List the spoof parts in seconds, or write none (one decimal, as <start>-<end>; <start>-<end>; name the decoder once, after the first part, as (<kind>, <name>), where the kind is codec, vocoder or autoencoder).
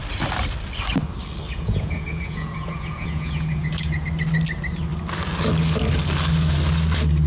1.5-4.0 (vocoder, Vocos)